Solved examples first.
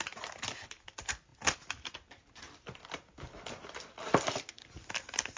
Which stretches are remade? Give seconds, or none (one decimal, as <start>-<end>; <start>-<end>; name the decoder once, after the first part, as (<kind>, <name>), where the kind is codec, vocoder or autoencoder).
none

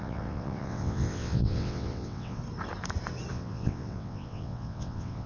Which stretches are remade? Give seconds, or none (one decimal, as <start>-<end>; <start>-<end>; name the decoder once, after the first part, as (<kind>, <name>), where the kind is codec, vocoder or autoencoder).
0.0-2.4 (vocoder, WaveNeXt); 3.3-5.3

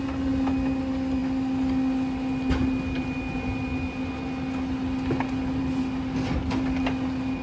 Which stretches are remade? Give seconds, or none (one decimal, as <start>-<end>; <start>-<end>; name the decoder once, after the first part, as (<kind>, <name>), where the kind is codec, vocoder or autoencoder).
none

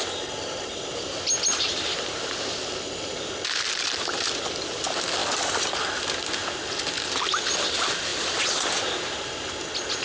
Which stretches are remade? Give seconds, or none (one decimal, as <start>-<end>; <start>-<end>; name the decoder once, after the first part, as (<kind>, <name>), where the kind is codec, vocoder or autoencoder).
1.5-2.3 (vocoder, BigVGAN v2)